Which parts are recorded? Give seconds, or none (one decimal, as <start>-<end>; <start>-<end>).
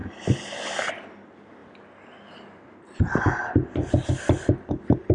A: 0.0-5.1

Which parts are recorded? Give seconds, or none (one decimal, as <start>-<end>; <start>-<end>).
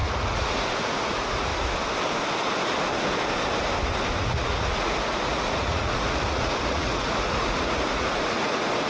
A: 1.5-4.2